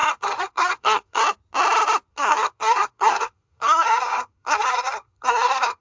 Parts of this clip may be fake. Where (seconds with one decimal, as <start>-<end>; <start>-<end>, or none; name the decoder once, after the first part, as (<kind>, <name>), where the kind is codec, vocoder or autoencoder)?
0.0-1.2 (codec, SNAC); 2.1-5.8